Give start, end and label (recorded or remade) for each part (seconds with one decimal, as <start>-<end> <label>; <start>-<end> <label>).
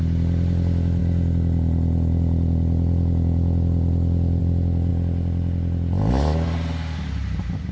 0.0-7.7 recorded